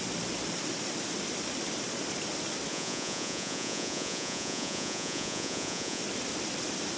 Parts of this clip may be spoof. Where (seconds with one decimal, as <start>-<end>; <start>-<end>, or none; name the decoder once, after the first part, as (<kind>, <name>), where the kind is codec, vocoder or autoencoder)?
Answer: 2.7-6.0 (vocoder, Vocos)